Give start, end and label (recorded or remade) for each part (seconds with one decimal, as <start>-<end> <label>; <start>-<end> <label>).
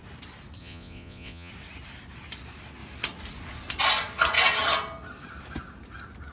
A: 0.0-0.6 recorded; 0.6-1.5 remade; 1.5-6.3 recorded